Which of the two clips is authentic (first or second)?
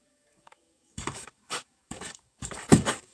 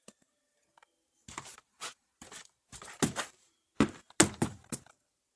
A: second